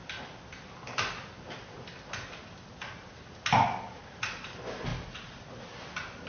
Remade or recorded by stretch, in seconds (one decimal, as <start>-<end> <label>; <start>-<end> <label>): 0.0-4.9 recorded; 4.9-5.6 remade; 5.6-6.3 recorded